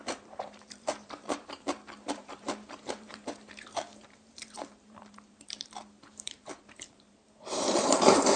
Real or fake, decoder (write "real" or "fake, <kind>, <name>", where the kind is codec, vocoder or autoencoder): fake, vocoder, BigVGAN v2